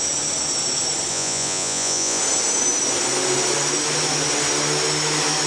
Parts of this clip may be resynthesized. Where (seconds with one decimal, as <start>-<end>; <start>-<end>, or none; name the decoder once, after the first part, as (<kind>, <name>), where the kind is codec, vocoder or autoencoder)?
1.1-2.2 (vocoder, Vocos)